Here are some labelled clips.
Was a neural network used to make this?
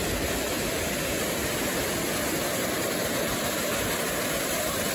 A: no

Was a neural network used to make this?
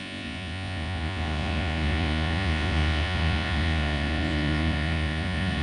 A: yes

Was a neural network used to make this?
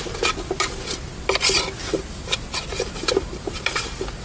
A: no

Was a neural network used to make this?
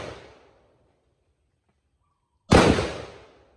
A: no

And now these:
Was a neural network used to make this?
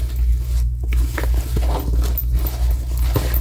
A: no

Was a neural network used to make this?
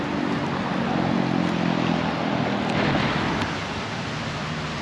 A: no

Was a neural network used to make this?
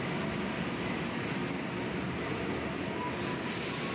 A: no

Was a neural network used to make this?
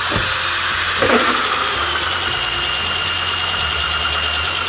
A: no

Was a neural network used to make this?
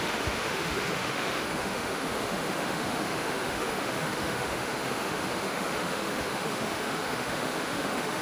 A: yes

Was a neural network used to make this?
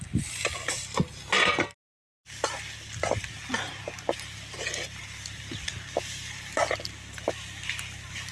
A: no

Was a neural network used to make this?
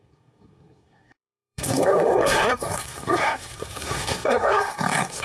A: yes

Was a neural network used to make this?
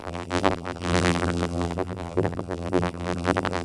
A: yes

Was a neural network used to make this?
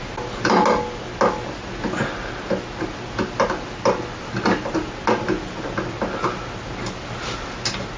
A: no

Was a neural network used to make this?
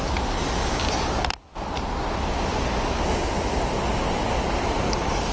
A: no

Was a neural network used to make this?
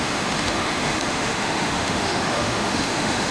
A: yes